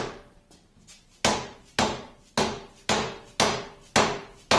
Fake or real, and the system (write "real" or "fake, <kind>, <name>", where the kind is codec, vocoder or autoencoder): real